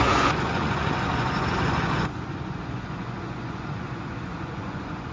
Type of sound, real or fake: fake